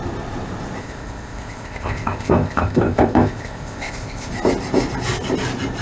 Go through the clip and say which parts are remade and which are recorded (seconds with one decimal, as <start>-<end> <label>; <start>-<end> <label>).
0.0-0.8 recorded; 0.8-4.3 remade; 4.3-5.8 recorded